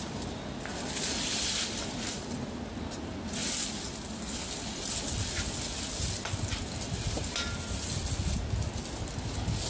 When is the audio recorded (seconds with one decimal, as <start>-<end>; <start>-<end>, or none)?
0.0-9.7